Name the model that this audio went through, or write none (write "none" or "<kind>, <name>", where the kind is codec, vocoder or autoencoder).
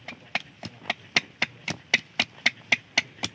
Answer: none